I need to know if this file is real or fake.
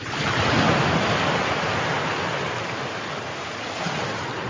real